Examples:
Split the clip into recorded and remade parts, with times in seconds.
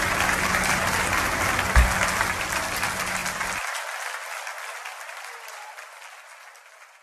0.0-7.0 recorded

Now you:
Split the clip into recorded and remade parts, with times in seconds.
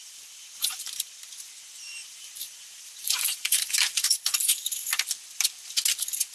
0.0-1.3 remade; 1.3-2.0 recorded; 2.0-5.0 remade; 5.0-6.3 recorded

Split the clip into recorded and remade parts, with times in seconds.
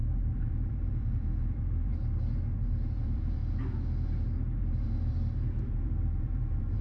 0.0-3.4 remade; 3.4-4.6 recorded; 4.6-6.8 remade